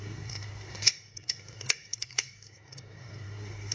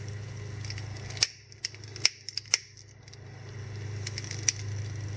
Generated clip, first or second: first